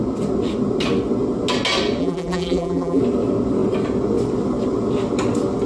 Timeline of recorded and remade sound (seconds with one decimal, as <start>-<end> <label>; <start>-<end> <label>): 0.0-2.0 recorded; 2.0-3.0 remade; 3.0-5.7 recorded